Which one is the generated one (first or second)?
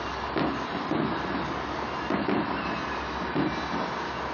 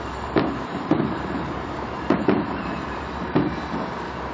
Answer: second